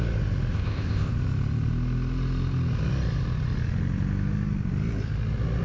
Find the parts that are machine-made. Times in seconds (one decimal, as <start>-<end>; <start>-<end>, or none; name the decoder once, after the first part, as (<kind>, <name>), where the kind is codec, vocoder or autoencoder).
0.5-1.1 (codec, ZipCodec)